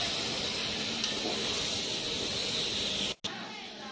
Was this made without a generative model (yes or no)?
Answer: yes